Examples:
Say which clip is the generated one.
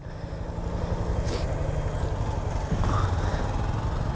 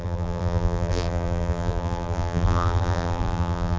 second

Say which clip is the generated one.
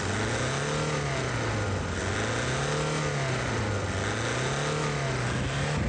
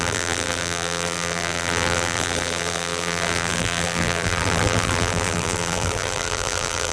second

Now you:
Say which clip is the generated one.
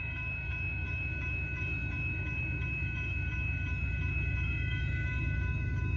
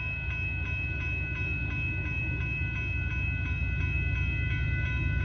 first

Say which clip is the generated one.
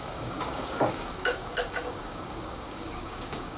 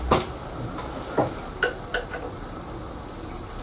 first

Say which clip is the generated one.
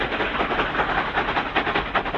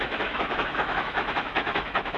second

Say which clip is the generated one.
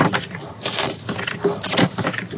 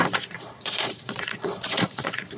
second